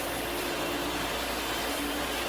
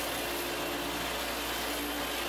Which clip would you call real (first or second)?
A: second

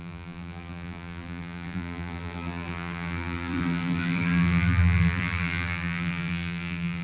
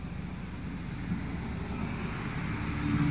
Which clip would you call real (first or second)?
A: second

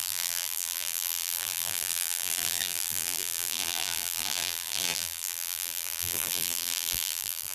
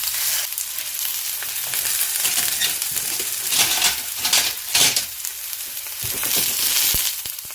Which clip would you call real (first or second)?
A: second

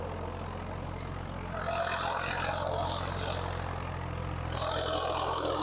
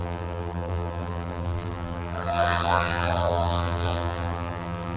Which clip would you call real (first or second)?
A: first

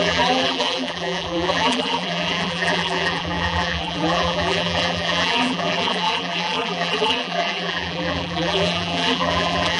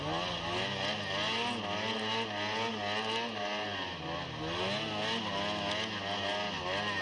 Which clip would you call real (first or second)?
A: second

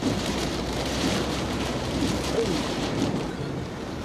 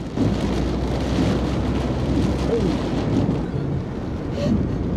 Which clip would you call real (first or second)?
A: second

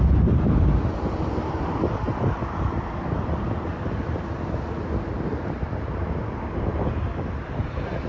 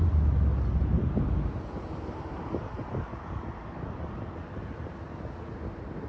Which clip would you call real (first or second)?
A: second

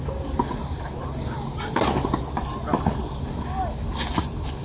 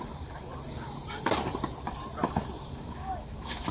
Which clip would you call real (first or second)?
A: first